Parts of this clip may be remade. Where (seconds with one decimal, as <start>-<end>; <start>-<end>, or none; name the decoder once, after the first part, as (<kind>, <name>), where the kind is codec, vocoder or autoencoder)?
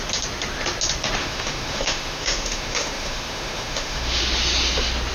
1.2-4.2 (autoencoder, DAC-VAE)